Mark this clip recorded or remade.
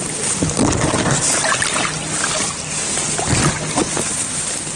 recorded